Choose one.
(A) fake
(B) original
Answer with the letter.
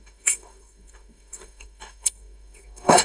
A